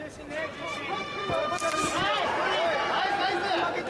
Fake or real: real